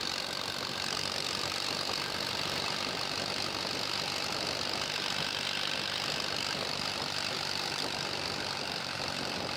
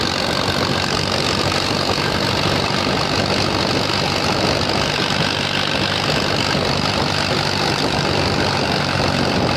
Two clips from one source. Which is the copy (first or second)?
first